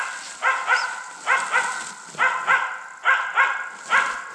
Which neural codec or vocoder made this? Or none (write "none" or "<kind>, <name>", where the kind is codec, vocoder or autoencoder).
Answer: none